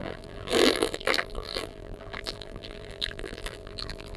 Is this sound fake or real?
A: fake